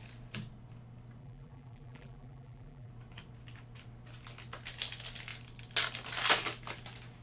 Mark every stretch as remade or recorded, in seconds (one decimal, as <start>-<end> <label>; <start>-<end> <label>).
0.0-1.2 recorded; 1.2-2.9 remade; 2.9-7.2 recorded